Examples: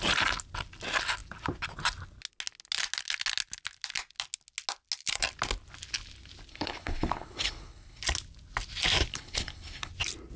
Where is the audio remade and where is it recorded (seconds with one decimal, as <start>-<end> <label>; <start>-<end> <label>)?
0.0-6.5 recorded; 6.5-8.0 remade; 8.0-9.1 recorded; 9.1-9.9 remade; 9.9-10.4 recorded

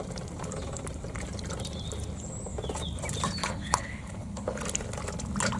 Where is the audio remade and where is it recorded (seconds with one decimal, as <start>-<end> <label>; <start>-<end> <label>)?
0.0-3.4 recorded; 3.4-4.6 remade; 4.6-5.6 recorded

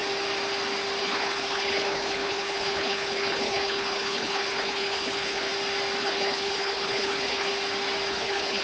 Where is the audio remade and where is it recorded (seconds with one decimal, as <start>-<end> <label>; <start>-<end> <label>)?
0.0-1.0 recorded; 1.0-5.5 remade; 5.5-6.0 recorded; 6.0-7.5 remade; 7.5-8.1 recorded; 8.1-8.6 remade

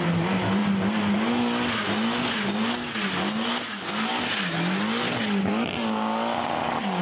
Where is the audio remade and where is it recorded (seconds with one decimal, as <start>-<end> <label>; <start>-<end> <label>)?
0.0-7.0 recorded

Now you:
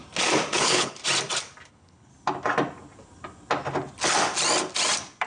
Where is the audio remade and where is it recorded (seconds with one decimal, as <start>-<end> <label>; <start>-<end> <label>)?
0.0-0.6 recorded; 0.6-1.0 remade; 1.0-1.7 recorded; 1.7-2.1 remade; 2.1-5.3 recorded